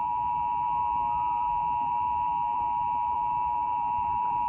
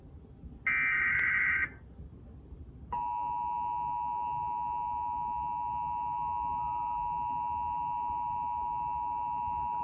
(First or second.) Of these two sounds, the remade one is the first